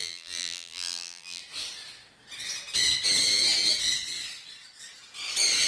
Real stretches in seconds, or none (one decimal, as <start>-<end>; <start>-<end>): 1.4-5.7